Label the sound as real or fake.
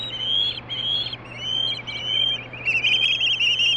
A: real